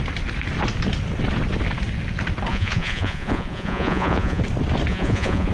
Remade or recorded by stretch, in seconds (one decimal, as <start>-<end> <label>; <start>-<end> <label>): 0.0-2.5 recorded; 2.5-4.4 remade; 4.4-4.9 recorded; 4.9-5.5 remade